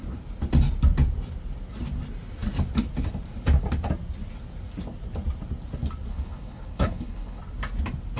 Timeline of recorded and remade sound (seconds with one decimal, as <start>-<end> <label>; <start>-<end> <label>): 0.0-6.1 recorded; 6.1-7.4 remade; 7.4-8.2 recorded